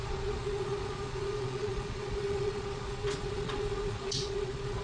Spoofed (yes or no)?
yes